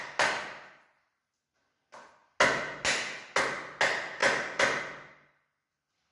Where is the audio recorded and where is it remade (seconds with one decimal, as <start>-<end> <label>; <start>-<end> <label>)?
0.0-6.1 recorded